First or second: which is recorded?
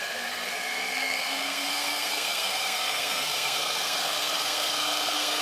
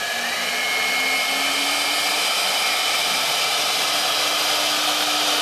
second